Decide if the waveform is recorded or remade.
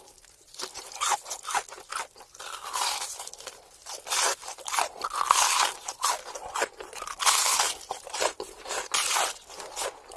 remade